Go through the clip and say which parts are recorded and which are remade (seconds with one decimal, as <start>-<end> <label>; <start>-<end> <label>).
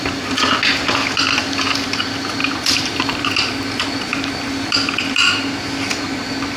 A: 0.0-6.6 recorded